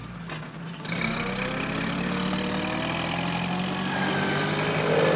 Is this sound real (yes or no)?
yes